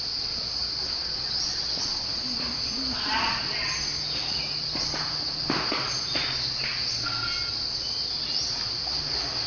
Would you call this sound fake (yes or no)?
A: no